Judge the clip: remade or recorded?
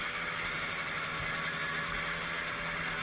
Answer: recorded